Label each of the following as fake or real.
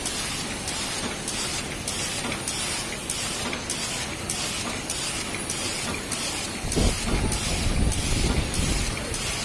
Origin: real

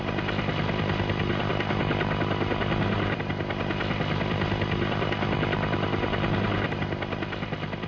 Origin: real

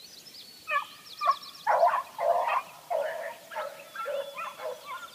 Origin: real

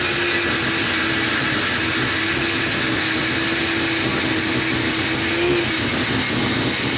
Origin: real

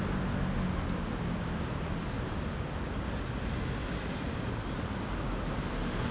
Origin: real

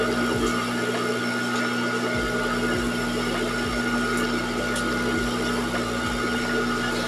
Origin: real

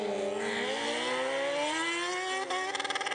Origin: real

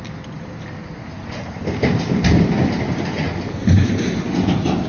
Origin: real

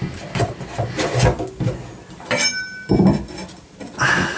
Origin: real